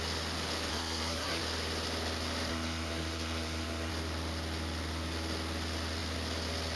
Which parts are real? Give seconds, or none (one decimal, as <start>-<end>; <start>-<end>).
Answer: 0.0-0.7; 1.4-2.5; 3.9-6.8